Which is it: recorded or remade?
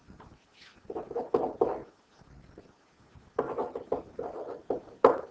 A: recorded